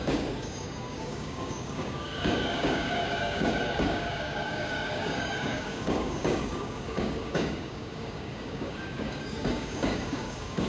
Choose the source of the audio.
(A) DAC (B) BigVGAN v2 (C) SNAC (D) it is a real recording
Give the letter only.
A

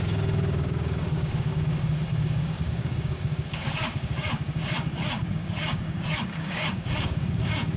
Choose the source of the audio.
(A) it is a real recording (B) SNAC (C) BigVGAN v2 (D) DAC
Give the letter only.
D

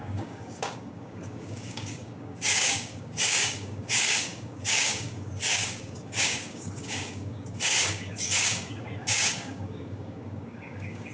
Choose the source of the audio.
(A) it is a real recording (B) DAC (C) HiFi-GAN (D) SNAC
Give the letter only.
B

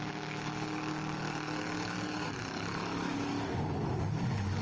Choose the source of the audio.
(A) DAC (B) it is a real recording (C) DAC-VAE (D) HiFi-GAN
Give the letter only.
A